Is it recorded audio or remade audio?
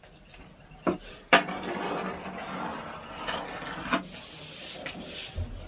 recorded